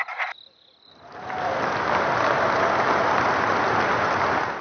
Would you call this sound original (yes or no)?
yes